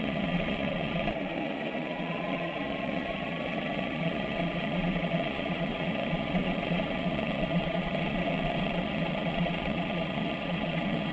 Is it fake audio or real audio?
fake